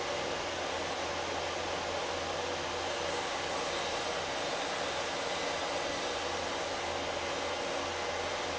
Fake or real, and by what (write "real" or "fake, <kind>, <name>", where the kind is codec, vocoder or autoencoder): real